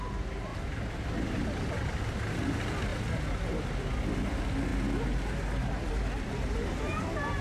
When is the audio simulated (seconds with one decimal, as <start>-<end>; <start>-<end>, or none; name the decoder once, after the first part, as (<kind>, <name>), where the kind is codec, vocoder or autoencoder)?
none